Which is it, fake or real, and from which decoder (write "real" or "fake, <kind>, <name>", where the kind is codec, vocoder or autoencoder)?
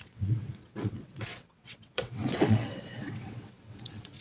fake, vocoder, WaveNeXt